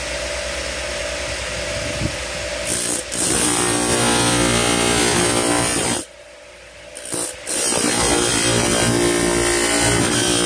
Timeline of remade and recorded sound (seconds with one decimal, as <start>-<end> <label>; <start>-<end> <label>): 0.0-10.5 recorded